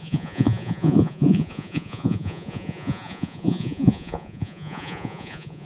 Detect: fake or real fake